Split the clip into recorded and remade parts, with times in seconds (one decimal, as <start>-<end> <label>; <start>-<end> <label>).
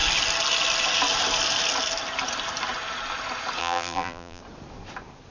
0.0-3.6 recorded; 3.6-4.4 remade; 4.4-5.3 recorded